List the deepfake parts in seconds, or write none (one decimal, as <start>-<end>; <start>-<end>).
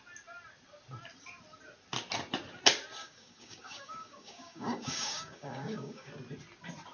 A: 3.0-6.1